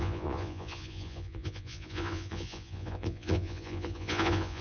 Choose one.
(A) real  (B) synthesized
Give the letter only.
B